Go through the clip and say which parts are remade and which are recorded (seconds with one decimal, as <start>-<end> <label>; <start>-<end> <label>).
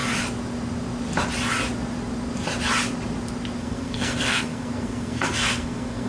0.0-3.6 recorded; 3.6-6.1 remade